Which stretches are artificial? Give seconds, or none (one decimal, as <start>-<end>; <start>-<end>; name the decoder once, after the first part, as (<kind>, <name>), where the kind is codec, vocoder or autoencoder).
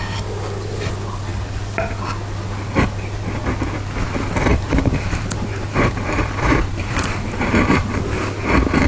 4.5-7.9 (vocoder, BigVGAN v2)